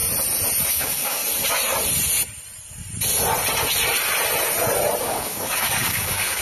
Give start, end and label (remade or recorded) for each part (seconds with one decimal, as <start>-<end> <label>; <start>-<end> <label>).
0.0-0.7 recorded; 0.7-1.2 remade; 1.2-5.0 recorded; 5.0-6.4 remade